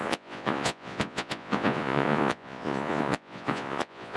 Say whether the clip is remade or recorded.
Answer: remade